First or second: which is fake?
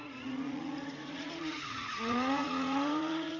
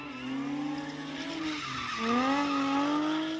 first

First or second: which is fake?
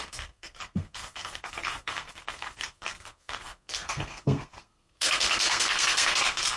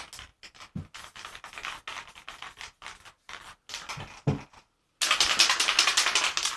first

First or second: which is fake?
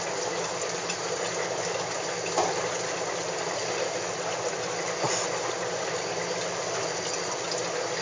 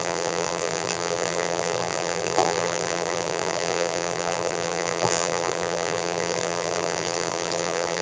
second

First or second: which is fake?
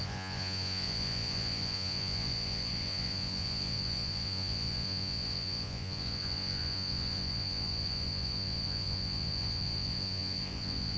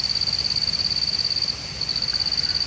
first